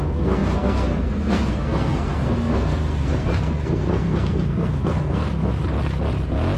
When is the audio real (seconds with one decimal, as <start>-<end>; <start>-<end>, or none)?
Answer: 5.6-6.6